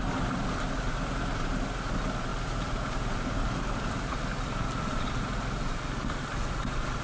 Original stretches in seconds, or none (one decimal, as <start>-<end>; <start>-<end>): 0.0-2.3; 6.5-7.0